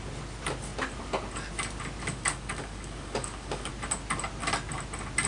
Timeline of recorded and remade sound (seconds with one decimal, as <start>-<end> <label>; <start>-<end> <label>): 0.0-2.0 recorded; 2.0-3.7 remade; 3.7-5.3 recorded